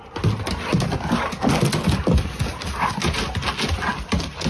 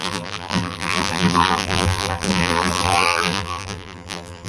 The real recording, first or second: first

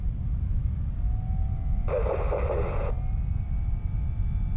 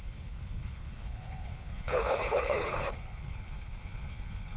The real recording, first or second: first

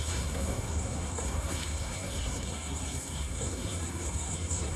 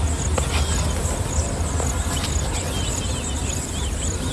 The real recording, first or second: second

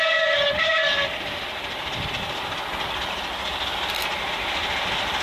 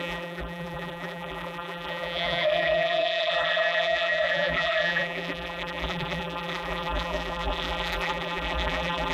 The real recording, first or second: first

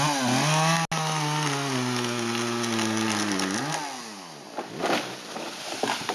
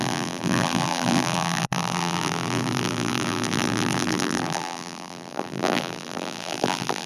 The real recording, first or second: first